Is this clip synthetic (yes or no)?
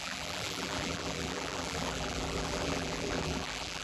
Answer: yes